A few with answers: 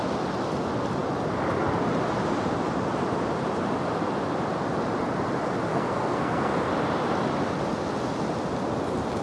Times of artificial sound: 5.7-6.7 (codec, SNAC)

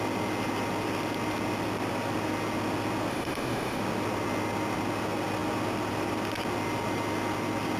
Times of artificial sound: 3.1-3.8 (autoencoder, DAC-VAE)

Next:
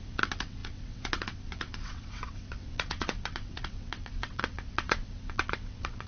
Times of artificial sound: 0.0-6.1 (vocoder, WaveNeXt)

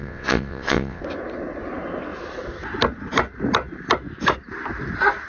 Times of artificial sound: 0.0-1.0 (vocoder, WaveNeXt)

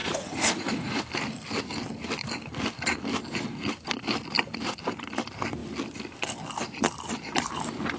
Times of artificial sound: 0.0-1.0 (vocoder, Vocos)

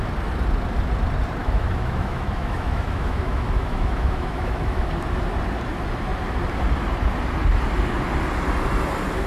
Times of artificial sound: 1.4-4.9 (autoencoder, DAC-VAE)

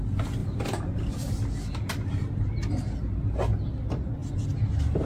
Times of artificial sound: 0.4-1.3 (vocoder, BigVGAN v2)

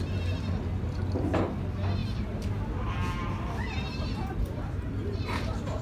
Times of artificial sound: 2.0-5.8 (vocoder, BigVGAN v2)